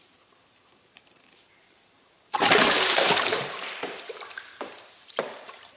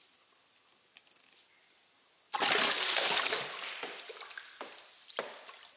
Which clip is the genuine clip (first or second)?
second